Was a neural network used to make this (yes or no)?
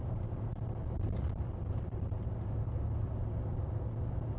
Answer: no